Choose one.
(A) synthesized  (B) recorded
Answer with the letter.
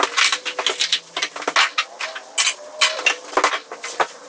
B